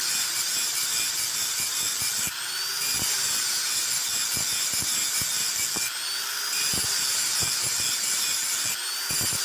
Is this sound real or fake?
real